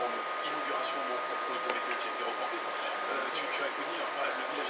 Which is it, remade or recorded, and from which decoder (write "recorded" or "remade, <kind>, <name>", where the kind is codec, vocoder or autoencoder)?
recorded